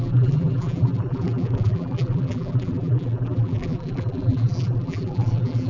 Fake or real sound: fake